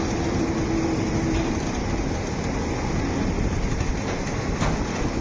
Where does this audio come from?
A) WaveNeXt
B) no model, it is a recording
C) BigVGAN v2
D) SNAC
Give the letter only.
B